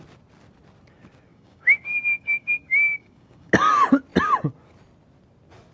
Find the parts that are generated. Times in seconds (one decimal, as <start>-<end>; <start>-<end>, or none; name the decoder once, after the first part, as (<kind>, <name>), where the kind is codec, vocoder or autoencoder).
1.3-3.5 (codec, DAC)